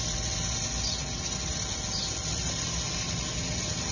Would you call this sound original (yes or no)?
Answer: yes